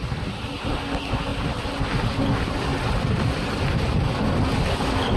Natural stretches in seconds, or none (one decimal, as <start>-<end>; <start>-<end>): 0.0-5.2